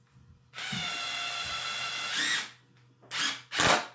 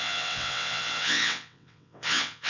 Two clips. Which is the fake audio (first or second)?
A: second